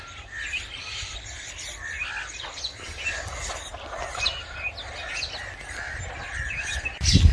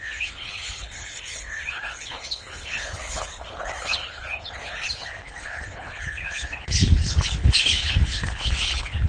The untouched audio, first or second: first